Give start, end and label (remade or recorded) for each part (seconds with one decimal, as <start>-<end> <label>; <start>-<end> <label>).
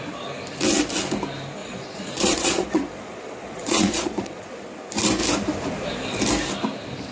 0.0-1.6 recorded; 1.6-4.4 remade; 4.4-7.1 recorded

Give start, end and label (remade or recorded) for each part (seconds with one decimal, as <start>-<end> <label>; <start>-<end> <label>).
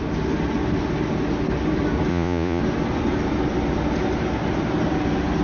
0.0-2.1 recorded; 2.1-2.6 remade; 2.6-5.4 recorded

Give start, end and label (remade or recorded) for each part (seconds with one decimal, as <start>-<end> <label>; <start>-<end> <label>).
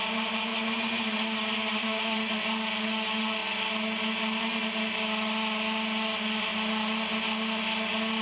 0.0-0.5 recorded; 0.5-2.3 remade; 2.3-8.2 recorded